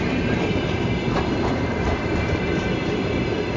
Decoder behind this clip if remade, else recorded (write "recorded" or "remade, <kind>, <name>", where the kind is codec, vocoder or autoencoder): recorded